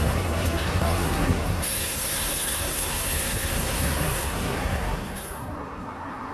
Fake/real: fake